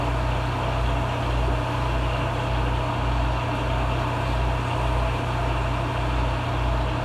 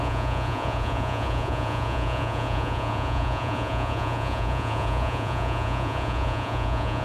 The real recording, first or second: first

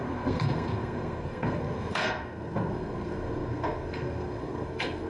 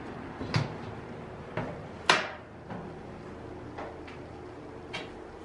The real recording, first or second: second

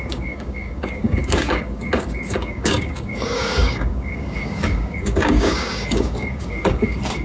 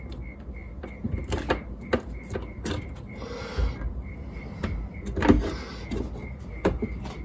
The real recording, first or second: second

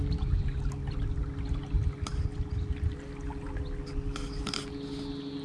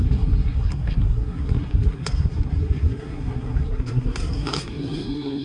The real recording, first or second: first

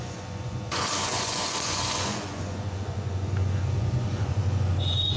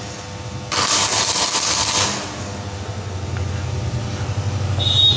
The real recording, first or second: second